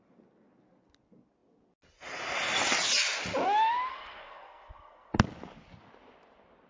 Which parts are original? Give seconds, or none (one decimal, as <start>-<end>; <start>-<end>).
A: 0.0-3.9; 5.1-6.7